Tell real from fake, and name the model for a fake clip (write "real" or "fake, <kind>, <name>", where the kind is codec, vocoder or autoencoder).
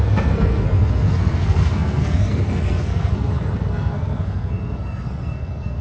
fake, codec, SNAC